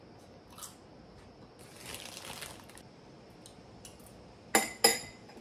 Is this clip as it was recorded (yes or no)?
yes